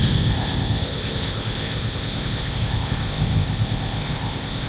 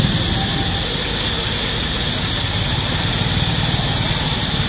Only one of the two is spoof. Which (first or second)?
first